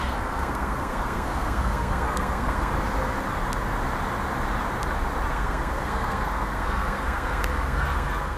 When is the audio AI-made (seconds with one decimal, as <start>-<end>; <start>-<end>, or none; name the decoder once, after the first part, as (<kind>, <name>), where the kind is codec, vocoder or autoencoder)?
0.0-2.7 (codec, SNAC); 5.3-8.4